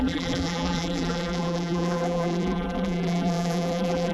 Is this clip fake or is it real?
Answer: fake